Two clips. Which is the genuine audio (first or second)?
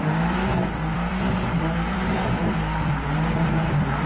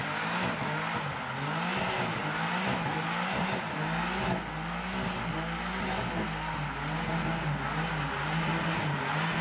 second